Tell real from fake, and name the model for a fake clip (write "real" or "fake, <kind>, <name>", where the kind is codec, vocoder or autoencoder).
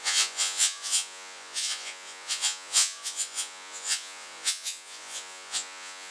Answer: fake, vocoder, Vocos